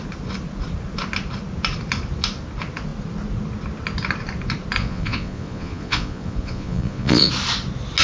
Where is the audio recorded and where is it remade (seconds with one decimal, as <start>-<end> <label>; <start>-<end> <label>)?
0.0-4.8 recorded; 4.8-7.3 remade; 7.3-8.0 recorded

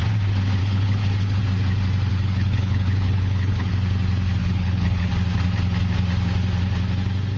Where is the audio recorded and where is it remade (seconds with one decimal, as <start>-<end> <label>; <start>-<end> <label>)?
0.0-0.6 recorded; 0.6-1.4 remade; 1.4-2.1 recorded; 2.1-3.7 remade; 3.7-4.4 recorded; 4.4-5.1 remade; 5.1-7.4 recorded

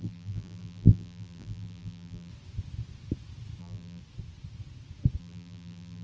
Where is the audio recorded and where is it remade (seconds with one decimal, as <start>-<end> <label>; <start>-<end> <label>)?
0.0-2.3 remade; 2.3-3.6 recorded; 3.6-4.0 remade; 4.0-5.2 recorded; 5.2-6.0 remade

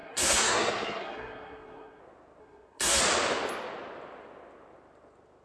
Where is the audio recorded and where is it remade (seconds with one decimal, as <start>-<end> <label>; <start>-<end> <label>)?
0.0-2.0 remade; 2.0-2.4 recorded; 2.4-3.0 remade; 3.0-5.4 recorded

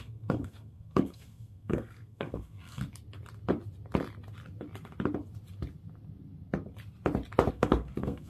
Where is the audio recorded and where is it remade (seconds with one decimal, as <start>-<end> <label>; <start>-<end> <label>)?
0.0-2.8 remade; 2.8-7.5 recorded; 7.5-8.3 remade

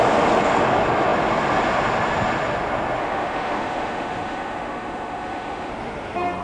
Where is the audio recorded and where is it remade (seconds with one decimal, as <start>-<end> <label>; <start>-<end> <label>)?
0.0-3.0 recorded; 3.0-5.7 remade; 5.7-6.4 recorded

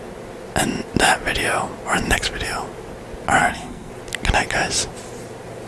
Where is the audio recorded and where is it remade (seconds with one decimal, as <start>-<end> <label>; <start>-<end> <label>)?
0.0-3.4 recorded; 3.4-3.9 remade; 3.9-5.7 recorded

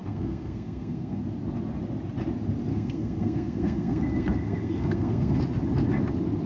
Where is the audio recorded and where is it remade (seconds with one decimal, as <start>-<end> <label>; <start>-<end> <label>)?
0.0-1.2 remade; 1.2-2.7 recorded; 2.7-5.4 remade; 5.4-6.5 recorded